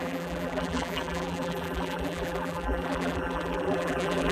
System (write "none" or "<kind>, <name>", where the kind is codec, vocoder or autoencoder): vocoder, BigVGAN v2